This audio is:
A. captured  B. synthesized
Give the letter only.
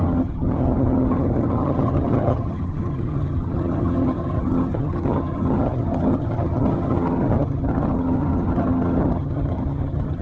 B